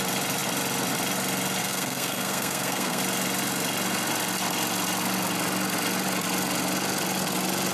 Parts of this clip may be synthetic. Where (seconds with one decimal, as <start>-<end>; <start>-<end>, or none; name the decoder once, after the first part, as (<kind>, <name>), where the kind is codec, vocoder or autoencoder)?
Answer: 1.6-3.0 (codec, SNAC)

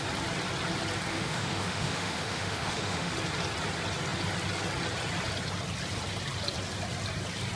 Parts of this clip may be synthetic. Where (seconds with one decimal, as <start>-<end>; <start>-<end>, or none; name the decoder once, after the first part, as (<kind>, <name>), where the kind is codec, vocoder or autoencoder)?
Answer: 1.1-3.1 (autoencoder, DAC-VAE)

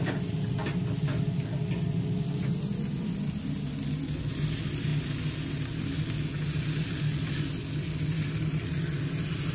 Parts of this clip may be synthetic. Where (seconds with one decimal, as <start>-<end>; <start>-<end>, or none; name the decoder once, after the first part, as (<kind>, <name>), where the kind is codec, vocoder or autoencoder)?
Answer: none

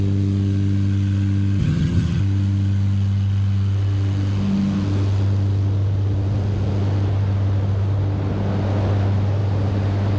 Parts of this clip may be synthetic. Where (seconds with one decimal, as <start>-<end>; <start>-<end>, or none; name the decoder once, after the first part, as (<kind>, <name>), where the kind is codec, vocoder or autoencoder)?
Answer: 1.6-2.2 (vocoder, HiFi-GAN)

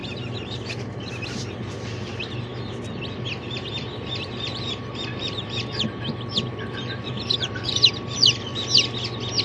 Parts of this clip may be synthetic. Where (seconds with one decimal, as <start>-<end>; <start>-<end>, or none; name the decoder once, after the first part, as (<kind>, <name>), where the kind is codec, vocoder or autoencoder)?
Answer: 0.0-2.5 (vocoder, BigVGAN v2); 3.7-8.5

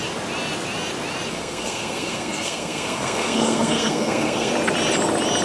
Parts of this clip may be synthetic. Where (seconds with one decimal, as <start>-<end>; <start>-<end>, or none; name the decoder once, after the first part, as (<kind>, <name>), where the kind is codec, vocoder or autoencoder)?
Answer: 1.3-4.5 (codec, SNAC)